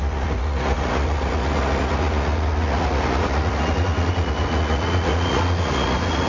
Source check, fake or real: fake